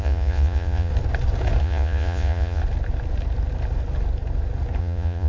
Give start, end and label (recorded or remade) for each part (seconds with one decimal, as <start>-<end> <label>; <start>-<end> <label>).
0.0-0.9 remade; 0.9-1.6 recorded; 1.6-2.6 remade; 2.6-4.8 recorded; 4.8-5.3 remade